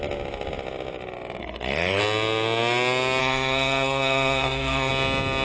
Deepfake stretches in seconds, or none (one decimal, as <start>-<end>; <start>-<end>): 1.4-2.0; 3.2-4.9